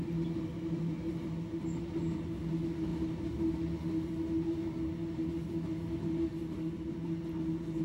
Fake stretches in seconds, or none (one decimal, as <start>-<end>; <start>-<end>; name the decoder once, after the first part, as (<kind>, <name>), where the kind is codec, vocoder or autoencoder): none